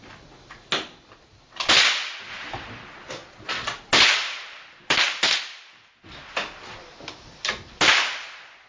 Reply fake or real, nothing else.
real